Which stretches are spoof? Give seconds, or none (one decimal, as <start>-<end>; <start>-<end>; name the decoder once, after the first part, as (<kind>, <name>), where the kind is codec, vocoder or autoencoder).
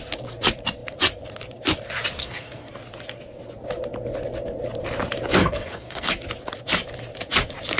2.2-2.7 (codec, SNAC); 5.4-6.1